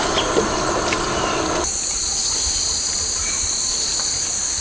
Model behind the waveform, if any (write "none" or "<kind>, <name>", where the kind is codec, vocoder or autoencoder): none